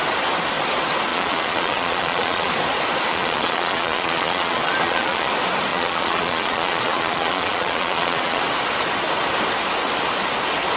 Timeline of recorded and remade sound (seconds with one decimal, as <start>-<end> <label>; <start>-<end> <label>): 0.0-1.1 recorded; 1.1-2.5 remade; 2.5-3.1 recorded; 3.1-5.3 remade; 5.3-5.7 recorded; 5.7-8.4 remade; 8.4-10.8 recorded